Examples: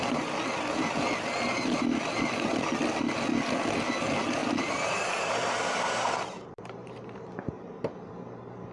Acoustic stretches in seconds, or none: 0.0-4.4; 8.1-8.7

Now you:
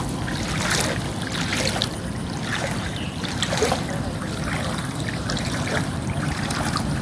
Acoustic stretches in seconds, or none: 0.0-2.5

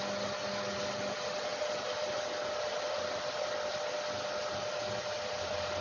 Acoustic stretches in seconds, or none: 0.0-5.8

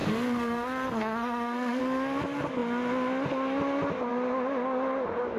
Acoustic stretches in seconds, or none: 1.8-5.4